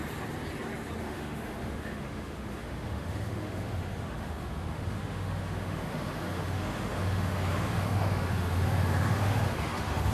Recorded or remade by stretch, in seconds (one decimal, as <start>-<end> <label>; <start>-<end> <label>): 0.0-1.0 recorded; 1.0-10.1 remade